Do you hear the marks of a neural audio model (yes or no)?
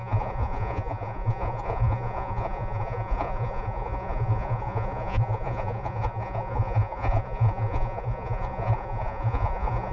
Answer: yes